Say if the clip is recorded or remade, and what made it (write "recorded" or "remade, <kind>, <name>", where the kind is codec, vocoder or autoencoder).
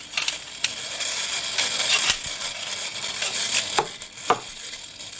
recorded